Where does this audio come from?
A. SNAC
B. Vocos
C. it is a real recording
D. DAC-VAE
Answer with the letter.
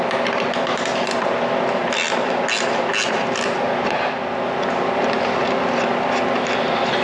C